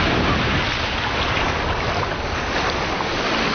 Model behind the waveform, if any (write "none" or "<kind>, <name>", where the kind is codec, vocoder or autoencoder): none